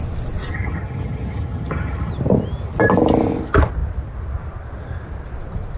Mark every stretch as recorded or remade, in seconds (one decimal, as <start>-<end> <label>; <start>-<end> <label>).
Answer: 0.0-0.5 recorded; 0.5-2.1 remade; 2.1-5.8 recorded